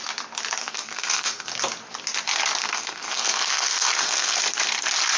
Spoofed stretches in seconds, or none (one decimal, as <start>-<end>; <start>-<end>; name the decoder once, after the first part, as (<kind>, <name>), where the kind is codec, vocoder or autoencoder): 0.6-1.5 (codec, SNAC); 2.6-4.4

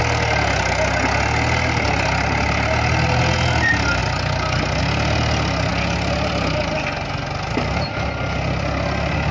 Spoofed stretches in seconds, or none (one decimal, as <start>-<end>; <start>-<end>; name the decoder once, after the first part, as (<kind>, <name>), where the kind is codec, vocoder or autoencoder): none

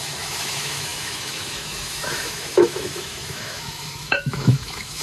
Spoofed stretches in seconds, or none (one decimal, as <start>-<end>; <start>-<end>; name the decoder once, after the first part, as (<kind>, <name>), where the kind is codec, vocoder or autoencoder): 0.0-5.0 (autoencoder, DAC-VAE)

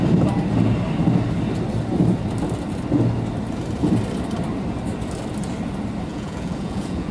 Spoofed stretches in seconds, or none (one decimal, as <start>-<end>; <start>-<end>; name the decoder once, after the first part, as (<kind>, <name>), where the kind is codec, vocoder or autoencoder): 6.1-7.1 (vocoder, Vocos)

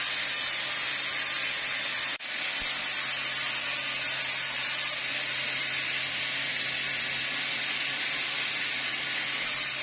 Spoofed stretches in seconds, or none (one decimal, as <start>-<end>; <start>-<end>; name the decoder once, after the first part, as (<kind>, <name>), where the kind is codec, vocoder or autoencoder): none